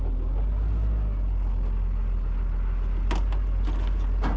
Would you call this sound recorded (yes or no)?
yes